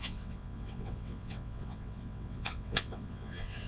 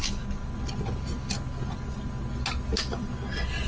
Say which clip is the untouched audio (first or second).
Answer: second